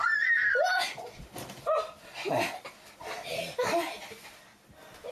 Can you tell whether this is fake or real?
real